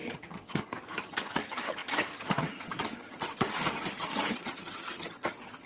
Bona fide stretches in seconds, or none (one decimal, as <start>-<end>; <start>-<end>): none